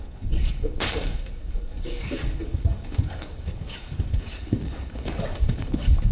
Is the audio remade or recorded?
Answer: remade